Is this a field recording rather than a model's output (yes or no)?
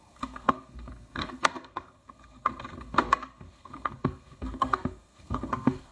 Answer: no